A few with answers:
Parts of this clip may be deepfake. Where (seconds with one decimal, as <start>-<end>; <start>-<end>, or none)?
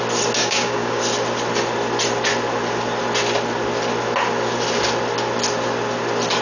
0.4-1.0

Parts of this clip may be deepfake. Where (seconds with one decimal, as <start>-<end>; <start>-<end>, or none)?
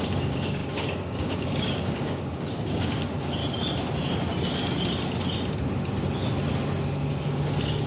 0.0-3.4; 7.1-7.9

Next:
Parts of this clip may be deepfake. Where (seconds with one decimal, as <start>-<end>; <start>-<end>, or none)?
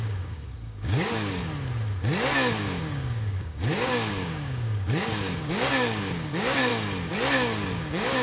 0.0-1.4; 2.5-6.7; 7.3-8.2